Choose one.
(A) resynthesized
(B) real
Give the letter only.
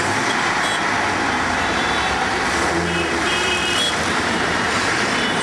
A